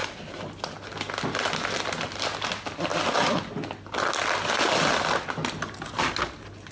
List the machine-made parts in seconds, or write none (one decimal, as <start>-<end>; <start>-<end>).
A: none